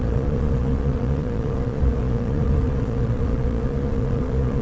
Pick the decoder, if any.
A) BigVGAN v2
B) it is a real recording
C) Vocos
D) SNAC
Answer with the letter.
C